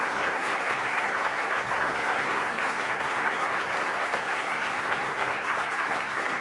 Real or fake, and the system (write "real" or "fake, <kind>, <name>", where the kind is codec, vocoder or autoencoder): fake, codec, SNAC